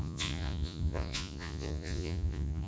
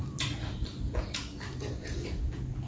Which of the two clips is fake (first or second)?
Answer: first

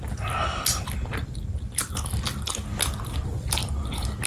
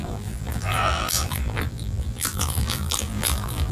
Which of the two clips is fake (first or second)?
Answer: second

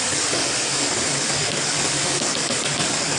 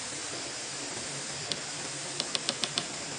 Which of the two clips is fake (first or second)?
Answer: first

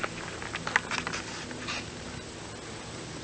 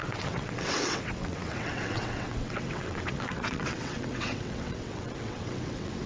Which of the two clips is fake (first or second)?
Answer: second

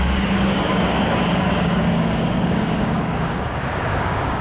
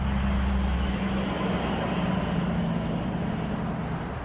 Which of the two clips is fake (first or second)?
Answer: first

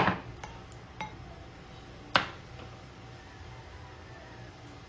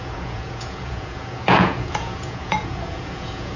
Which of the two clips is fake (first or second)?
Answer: second